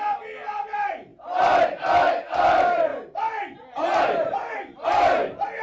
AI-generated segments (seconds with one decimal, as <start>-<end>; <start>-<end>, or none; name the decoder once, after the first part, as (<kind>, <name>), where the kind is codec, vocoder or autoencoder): none